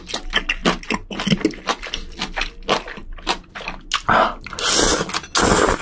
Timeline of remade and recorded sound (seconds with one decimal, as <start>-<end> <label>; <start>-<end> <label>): 0.0-5.8 recorded